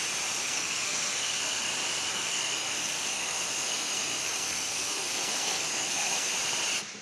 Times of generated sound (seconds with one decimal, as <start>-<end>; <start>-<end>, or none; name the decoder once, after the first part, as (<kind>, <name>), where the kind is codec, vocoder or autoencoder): 0.4-1.7 (codec, SNAC); 2.1-6.3